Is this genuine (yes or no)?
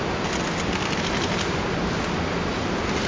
yes